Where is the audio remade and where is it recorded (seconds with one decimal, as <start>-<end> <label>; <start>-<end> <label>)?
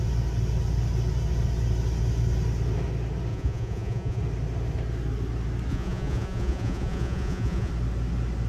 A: 0.0-3.3 recorded; 3.3-4.2 remade; 4.2-5.7 recorded; 5.7-7.7 remade; 7.7-8.5 recorded